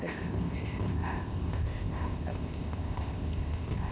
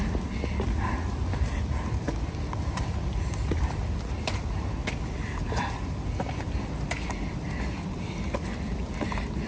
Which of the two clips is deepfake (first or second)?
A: first